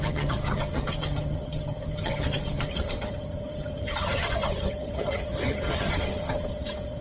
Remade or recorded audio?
remade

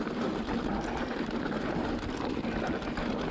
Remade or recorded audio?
recorded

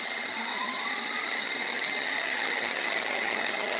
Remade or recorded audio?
remade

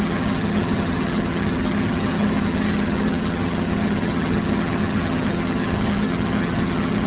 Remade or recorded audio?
remade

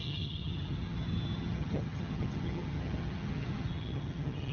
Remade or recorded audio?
remade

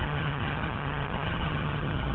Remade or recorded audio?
remade